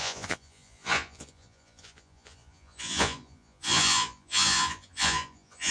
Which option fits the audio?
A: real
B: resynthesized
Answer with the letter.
B